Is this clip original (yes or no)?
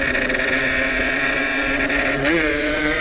no